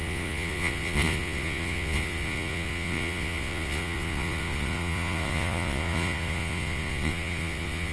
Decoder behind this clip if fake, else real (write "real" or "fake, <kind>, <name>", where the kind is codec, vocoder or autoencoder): fake, vocoder, Vocos